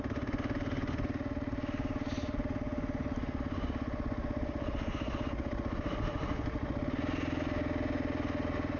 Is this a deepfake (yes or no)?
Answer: no